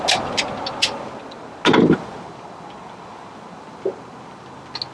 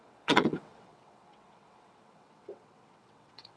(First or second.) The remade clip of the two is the second